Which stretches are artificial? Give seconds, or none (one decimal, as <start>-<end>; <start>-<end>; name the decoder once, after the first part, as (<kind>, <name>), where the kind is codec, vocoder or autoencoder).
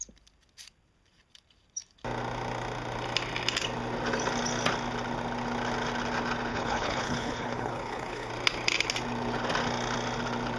6.5-8.3 (codec, HILCodec)